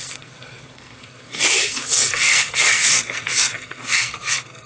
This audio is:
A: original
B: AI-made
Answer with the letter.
B